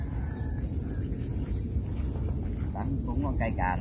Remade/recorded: recorded